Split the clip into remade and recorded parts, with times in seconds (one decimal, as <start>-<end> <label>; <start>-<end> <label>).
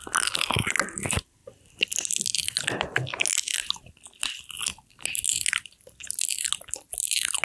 0.0-1.4 recorded; 1.4-2.1 remade; 2.1-3.6 recorded; 3.6-5.3 remade; 5.3-7.4 recorded